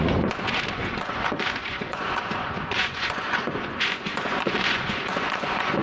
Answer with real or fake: fake